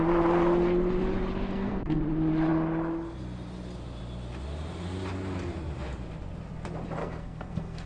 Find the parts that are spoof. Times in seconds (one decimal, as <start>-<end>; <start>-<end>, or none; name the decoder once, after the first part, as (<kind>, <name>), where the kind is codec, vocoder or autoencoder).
1.5-2.0 (codec, SNAC); 7.0-7.9